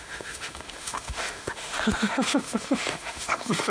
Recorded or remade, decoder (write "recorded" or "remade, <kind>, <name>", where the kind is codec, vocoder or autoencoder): remade, autoencoder, DAC-VAE